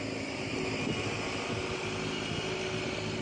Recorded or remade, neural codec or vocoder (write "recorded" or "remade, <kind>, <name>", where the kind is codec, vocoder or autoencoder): recorded